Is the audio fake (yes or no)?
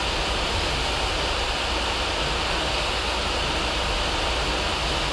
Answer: no